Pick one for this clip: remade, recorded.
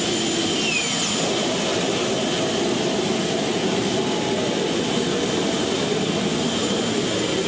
recorded